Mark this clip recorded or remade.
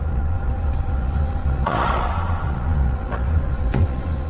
remade